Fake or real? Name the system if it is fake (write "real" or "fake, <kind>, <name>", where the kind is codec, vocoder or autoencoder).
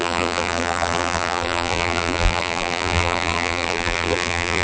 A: fake, vocoder, BigVGAN v2